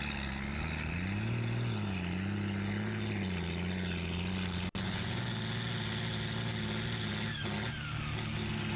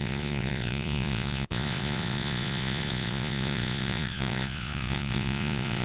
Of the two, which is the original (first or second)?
first